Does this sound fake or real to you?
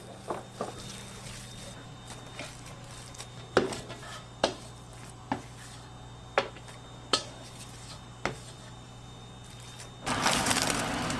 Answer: real